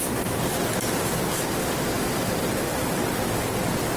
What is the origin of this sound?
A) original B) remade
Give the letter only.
B